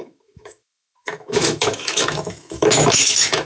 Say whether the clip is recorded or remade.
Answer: remade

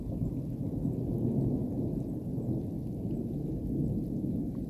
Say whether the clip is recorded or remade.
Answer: recorded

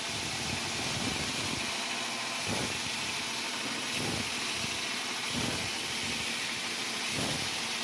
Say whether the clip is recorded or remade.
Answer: recorded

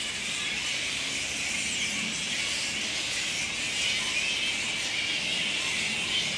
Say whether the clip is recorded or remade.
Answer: recorded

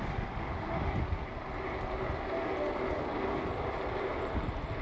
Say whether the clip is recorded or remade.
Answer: recorded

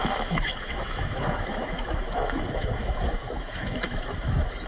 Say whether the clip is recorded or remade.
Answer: remade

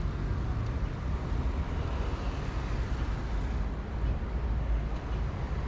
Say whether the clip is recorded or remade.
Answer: recorded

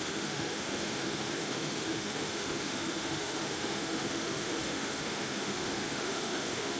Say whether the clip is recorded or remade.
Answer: remade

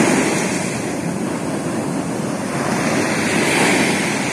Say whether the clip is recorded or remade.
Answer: recorded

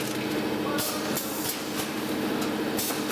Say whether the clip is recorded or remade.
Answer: recorded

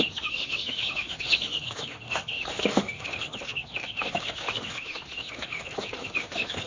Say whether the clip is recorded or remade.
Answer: remade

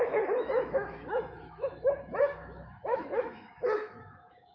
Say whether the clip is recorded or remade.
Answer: remade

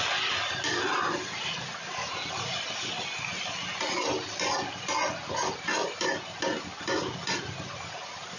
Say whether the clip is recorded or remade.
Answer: recorded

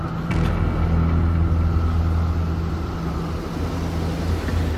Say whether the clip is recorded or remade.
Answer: recorded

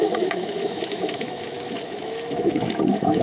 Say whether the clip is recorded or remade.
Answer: remade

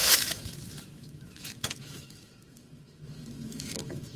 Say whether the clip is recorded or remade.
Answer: remade